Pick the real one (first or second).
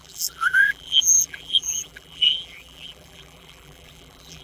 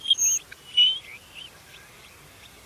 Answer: second